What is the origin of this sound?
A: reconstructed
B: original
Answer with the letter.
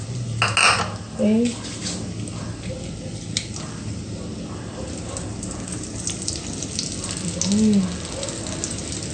B